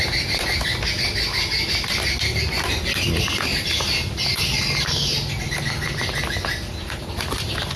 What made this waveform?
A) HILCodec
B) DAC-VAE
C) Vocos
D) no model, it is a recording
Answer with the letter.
D